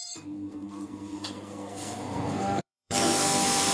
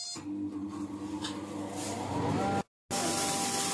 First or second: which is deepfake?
first